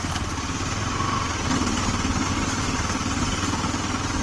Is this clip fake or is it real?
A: real